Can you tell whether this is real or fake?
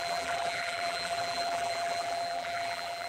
fake